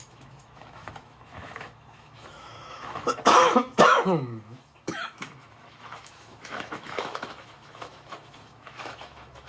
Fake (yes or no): yes